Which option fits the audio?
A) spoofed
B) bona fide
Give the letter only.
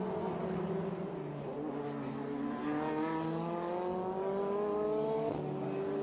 B